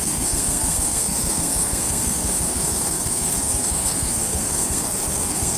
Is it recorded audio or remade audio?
remade